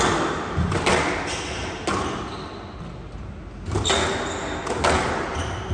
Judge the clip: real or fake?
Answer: real